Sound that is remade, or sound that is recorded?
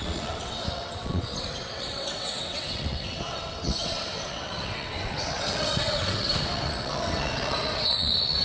remade